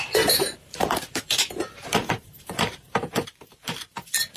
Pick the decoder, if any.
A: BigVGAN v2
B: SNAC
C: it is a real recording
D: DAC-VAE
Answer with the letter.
A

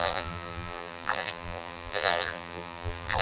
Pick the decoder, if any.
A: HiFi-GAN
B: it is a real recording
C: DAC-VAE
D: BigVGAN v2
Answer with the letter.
D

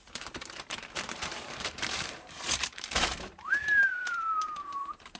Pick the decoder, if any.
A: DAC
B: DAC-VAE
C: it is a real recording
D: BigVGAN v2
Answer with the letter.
D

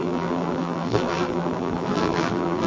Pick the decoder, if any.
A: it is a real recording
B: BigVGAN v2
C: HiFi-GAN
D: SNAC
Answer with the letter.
B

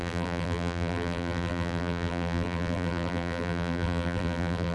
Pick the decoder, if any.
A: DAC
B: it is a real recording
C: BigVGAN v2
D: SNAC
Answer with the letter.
C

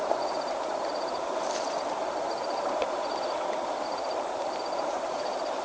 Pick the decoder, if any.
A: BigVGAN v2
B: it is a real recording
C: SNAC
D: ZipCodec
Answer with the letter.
A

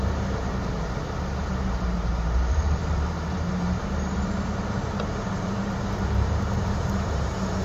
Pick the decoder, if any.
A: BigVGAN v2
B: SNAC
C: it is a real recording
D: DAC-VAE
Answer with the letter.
A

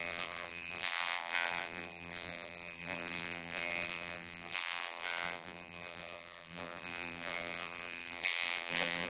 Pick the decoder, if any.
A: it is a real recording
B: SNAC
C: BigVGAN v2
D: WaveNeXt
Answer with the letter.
C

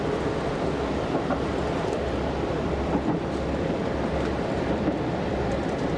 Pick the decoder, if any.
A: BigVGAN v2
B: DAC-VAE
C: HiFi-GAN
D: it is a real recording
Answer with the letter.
A